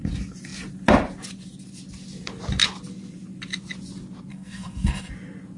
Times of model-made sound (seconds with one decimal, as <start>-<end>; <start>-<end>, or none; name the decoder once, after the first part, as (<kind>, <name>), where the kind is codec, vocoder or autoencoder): 4.3-5.1 (codec, SNAC)